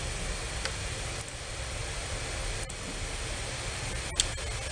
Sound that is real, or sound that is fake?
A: real